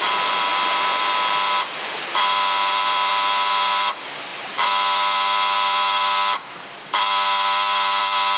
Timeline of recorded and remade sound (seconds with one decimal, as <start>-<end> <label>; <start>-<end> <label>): 0.0-8.4 remade